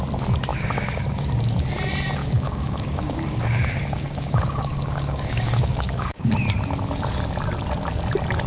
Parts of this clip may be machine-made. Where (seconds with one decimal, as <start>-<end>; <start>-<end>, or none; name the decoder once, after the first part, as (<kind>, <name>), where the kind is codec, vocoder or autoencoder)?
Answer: 0.5-1.3 (codec, DAC); 2.2-6.3